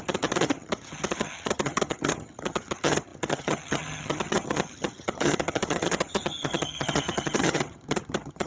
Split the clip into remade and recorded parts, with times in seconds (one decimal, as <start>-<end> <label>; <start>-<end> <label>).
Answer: 0.0-8.5 remade